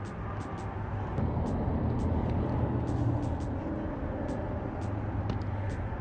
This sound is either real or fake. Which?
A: real